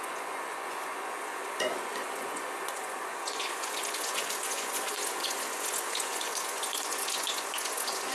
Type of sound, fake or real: fake